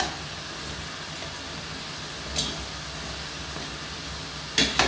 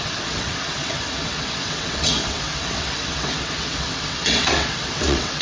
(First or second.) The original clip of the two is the first